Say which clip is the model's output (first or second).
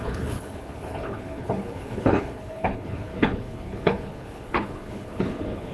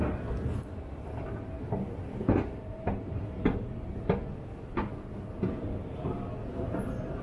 first